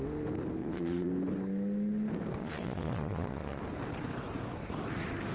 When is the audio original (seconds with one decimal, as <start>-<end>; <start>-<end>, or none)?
0.0-0.6; 1.1-2.4; 3.6-5.3